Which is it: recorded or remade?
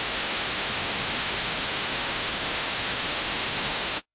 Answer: remade